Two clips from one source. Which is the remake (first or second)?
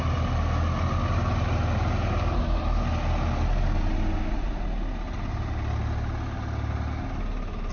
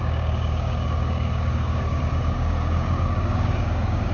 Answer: second